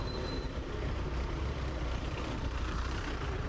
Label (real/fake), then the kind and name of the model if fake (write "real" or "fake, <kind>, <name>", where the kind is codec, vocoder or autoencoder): fake, vocoder, BigVGAN v2